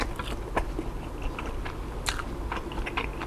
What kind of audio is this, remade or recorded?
recorded